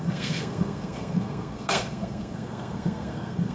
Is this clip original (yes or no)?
no